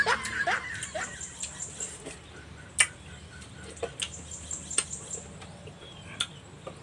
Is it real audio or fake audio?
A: real